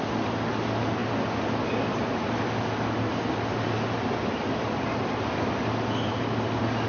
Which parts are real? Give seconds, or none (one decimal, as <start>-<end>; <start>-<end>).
0.0-6.9